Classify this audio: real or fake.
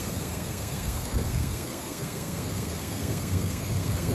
fake